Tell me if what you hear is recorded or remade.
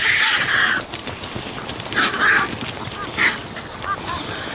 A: recorded